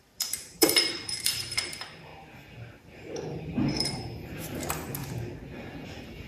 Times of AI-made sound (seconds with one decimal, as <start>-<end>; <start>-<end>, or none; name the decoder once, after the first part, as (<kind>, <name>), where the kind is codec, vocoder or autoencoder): 0.0-2.1 (vocoder, BigVGAN v2); 2.9-4.9